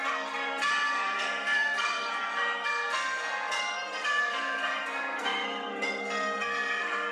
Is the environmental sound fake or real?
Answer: fake